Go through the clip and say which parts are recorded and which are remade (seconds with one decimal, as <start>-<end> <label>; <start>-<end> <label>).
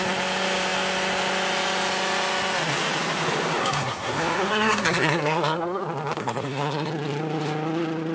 0.0-3.6 recorded; 3.6-5.8 remade; 5.8-6.2 recorded; 6.2-6.9 remade; 6.9-8.1 recorded